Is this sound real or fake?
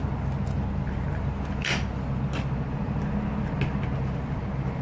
real